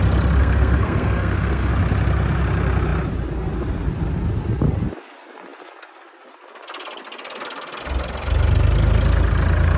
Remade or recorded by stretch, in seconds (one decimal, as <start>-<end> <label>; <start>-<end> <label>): 0.0-0.4 recorded; 0.4-1.7 remade; 1.7-9.8 recorded